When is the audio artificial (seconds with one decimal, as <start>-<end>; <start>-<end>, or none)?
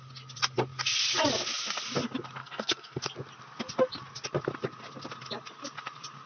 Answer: 2.4-3.0